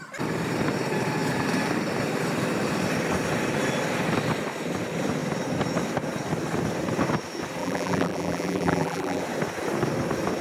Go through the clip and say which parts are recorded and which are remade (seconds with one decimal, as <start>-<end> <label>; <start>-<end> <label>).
0.0-7.6 recorded; 7.6-9.2 remade; 9.2-10.4 recorded